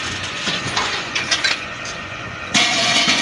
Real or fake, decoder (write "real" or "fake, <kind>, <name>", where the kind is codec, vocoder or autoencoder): fake, vocoder, Vocos